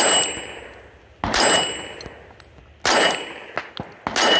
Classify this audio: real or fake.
real